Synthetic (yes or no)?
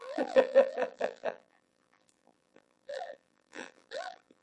yes